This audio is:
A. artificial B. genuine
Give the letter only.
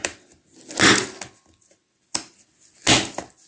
B